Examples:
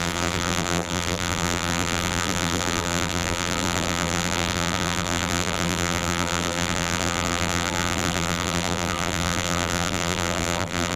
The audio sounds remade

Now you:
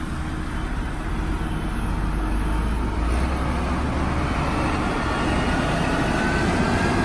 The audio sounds recorded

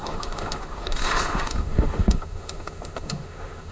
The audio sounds remade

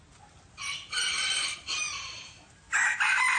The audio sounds recorded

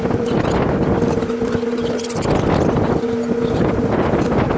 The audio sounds recorded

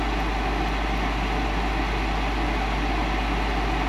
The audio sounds recorded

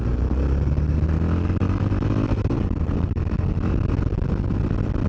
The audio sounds recorded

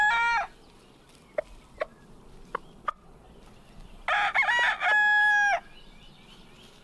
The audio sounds recorded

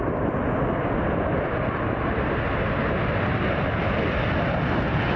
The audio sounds recorded